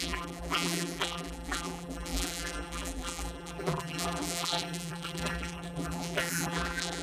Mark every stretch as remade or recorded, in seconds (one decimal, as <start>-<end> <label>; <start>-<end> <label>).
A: 0.0-7.0 remade